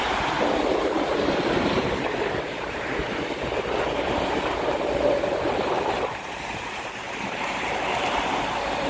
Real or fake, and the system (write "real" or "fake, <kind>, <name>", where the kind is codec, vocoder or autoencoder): fake, vocoder, BigVGAN v2